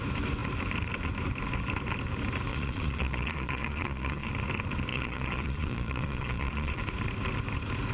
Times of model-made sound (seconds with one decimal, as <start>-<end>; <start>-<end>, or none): 2.5-4.3; 4.9-6.8